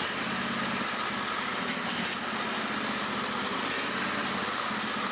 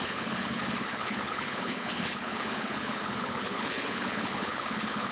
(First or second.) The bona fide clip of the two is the first